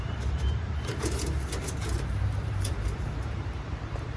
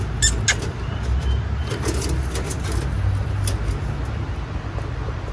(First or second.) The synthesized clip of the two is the first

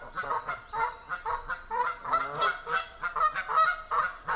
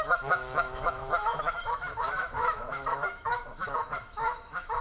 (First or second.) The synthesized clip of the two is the second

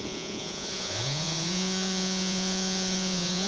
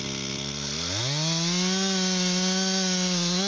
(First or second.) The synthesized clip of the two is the first